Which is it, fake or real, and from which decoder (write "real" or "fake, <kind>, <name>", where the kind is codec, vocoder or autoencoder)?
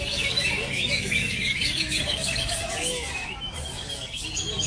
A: fake, codec, DAC